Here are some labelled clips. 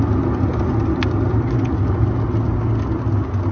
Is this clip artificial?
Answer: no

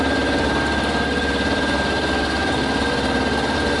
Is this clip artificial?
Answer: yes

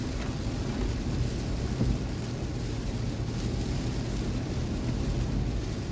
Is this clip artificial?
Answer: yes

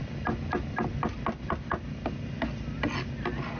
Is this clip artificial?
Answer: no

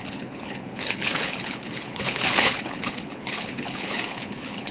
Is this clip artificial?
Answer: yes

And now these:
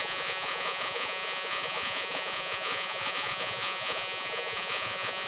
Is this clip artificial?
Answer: yes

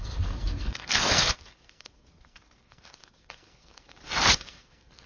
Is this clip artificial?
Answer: yes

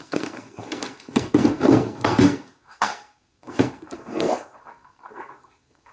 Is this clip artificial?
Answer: yes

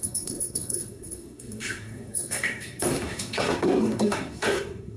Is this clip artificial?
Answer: yes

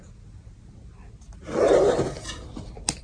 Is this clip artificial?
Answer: no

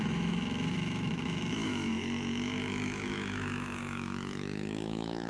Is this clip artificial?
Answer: yes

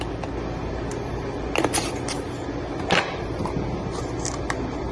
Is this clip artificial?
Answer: no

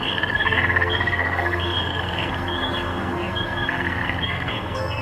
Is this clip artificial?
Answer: yes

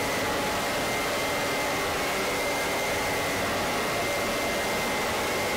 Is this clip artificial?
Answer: no